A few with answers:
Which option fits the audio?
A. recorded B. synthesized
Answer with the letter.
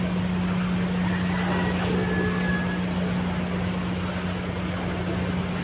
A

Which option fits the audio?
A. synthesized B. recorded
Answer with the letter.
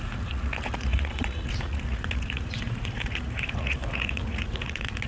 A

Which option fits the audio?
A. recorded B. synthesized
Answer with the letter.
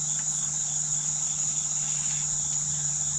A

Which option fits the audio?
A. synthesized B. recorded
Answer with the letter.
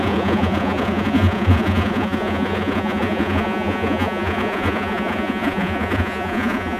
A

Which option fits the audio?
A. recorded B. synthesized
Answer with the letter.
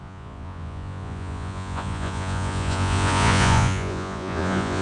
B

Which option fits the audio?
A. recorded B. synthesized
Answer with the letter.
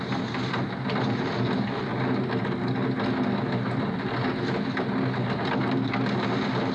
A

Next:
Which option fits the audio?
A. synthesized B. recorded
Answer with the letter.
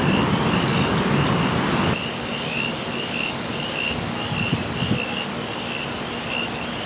B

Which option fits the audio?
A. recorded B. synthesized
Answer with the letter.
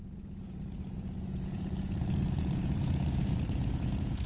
B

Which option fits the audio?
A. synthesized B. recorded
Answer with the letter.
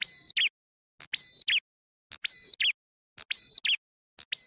B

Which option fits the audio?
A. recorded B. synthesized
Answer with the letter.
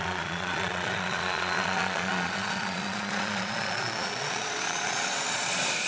B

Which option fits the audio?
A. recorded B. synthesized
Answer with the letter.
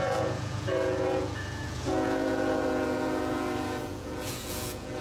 B